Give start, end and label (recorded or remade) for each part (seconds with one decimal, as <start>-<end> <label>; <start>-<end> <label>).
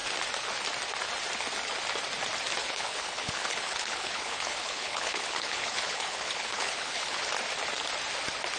0.0-2.6 recorded; 2.6-7.2 remade; 7.2-8.6 recorded